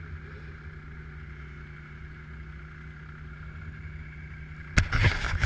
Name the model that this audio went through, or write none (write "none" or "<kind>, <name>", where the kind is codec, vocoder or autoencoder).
none